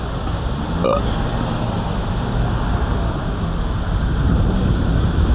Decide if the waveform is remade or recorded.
recorded